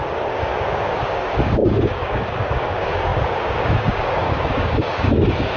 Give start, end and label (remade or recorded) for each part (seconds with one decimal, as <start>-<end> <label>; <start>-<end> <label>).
0.0-5.6 remade